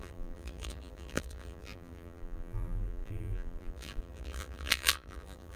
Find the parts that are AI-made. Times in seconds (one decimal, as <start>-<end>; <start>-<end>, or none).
0.0-5.6